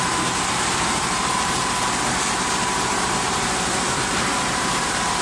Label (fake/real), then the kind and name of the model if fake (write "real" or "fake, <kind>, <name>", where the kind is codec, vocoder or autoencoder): fake, vocoder, BigVGAN v2